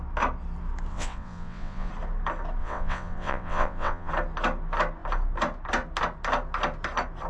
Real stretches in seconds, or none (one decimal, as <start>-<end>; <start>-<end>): 0.0-0.9; 1.9-2.6; 4.1-7.3